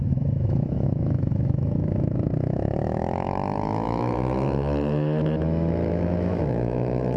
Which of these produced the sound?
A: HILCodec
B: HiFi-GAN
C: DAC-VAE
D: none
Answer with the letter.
C